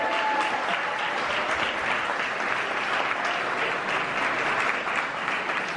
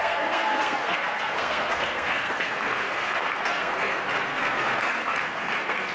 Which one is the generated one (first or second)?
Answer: second